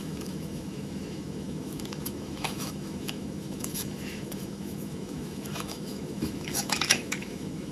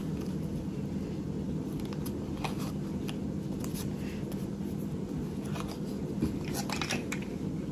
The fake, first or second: first